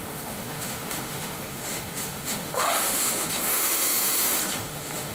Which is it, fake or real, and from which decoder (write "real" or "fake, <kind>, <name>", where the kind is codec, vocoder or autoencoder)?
fake, autoencoder, DAC-VAE